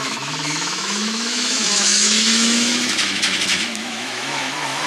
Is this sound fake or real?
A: fake